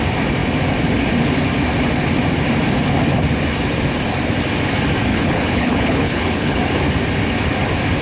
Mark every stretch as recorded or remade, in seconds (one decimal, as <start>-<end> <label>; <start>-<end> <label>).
0.0-5.1 recorded; 5.1-6.6 remade; 6.6-8.0 recorded